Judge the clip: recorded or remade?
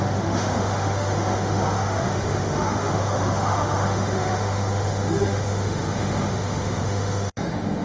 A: remade